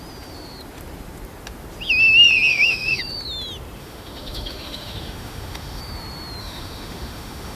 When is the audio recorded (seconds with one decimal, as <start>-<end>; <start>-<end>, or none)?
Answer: 0.0-2.5; 3.0-3.8; 5.8-6.4